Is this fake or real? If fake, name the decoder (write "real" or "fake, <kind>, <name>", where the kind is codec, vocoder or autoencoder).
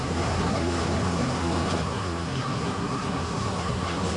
fake, codec, SNAC